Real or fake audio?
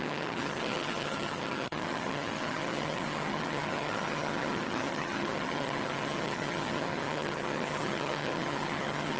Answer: fake